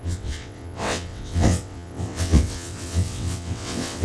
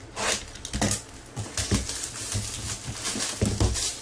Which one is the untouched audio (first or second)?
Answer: second